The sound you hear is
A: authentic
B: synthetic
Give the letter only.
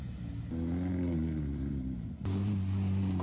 A